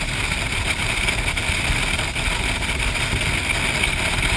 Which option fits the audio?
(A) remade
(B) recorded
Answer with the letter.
B